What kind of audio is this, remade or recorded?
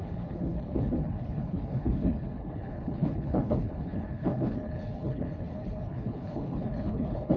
remade